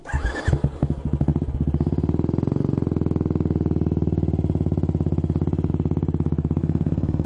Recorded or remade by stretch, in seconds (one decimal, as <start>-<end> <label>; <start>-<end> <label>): 0.0-6.6 recorded; 6.6-7.3 remade

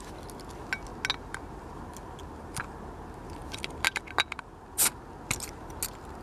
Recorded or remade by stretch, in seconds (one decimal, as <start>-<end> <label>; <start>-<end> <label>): 0.0-6.2 recorded